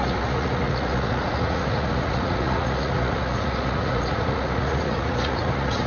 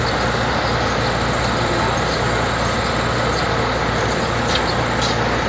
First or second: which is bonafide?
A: second